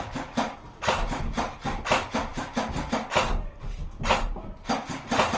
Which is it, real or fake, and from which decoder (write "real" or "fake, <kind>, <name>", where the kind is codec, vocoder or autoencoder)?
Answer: real